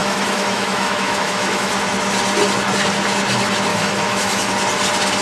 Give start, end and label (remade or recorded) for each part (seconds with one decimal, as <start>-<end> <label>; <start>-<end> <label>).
0.0-1.7 remade; 1.7-3.7 recorded; 3.7-4.5 remade; 4.5-5.2 recorded